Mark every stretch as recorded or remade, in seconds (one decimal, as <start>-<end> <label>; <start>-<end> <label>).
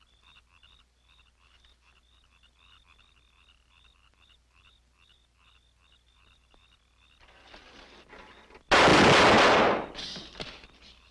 0.0-11.1 recorded